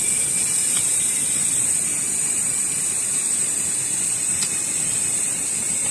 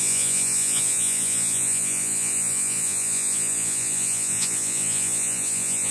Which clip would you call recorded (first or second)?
first